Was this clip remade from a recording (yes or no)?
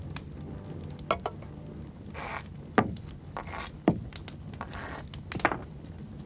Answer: no